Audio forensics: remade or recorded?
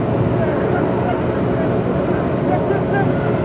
recorded